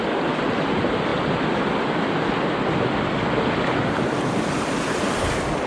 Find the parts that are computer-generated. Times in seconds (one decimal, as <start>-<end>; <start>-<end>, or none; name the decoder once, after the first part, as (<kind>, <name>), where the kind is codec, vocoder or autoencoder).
none